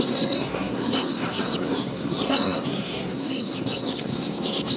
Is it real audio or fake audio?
fake